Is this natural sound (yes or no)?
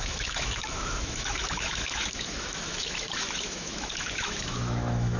no